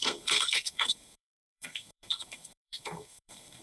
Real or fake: fake